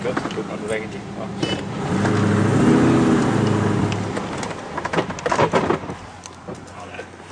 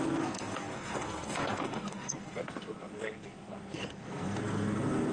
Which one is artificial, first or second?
second